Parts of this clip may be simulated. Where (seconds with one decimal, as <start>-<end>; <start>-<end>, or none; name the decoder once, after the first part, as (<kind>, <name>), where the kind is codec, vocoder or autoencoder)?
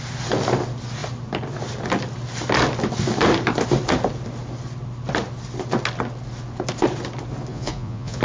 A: 7.5-8.2 (vocoder, Vocos)